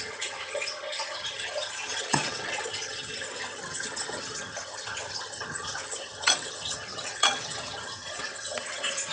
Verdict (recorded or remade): remade